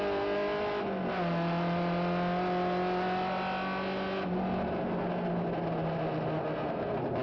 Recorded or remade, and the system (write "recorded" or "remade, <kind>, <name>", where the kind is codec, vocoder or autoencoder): recorded